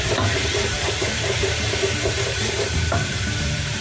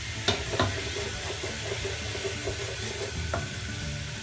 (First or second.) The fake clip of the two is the first